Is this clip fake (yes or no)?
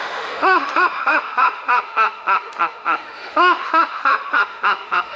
yes